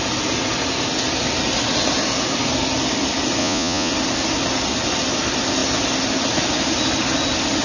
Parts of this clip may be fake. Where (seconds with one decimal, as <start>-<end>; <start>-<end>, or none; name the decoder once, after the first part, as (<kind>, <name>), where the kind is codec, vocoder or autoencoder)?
3.4-3.9 (vocoder, Vocos)